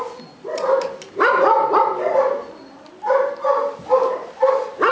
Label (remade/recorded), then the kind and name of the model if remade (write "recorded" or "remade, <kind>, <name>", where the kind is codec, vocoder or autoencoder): recorded